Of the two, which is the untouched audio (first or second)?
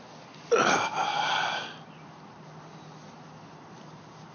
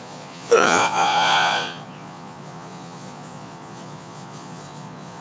first